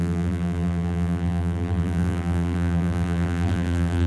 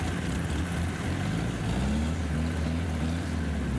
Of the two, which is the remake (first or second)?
first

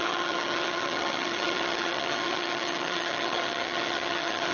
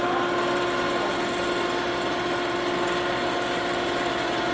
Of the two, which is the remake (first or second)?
first